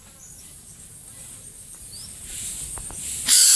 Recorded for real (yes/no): no